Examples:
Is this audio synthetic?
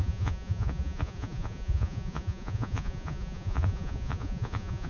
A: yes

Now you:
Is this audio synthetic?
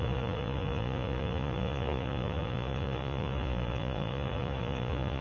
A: yes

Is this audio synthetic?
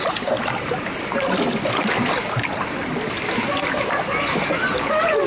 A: no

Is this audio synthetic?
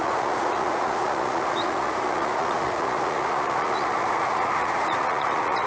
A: yes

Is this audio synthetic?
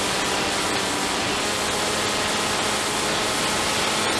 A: no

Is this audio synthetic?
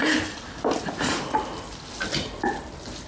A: no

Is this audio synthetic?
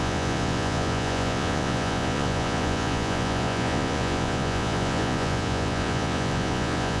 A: yes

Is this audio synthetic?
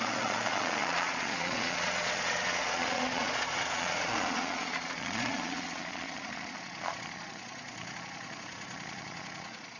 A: yes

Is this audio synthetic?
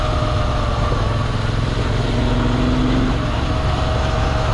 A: no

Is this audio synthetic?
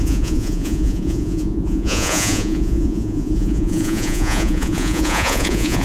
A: yes